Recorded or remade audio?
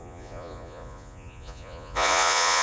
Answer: remade